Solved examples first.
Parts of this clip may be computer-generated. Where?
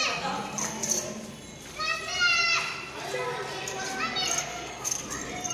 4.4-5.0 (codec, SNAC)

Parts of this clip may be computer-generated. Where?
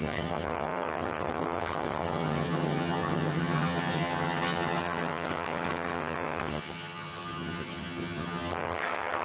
0.0-9.2 (vocoder, HiFi-GAN)